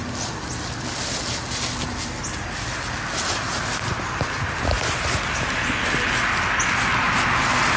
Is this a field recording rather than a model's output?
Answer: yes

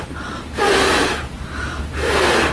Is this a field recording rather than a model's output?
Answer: no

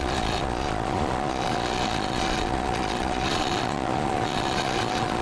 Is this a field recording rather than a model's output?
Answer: no